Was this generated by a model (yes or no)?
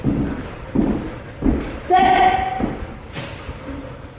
yes